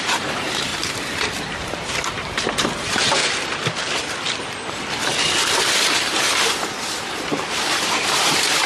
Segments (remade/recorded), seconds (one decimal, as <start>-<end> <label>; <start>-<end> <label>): 0.0-3.2 remade; 3.2-7.0 recorded; 7.0-8.7 remade